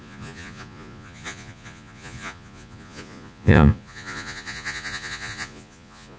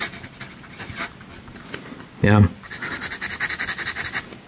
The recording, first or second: second